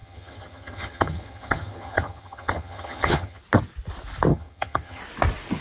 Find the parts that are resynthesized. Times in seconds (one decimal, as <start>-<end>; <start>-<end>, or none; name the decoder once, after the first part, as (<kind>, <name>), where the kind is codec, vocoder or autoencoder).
0.0-3.4 (vocoder, HiFi-GAN); 4.3-5.0